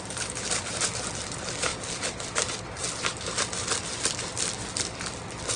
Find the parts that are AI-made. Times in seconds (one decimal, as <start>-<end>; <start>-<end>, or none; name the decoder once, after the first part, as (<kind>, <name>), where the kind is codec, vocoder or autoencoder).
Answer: none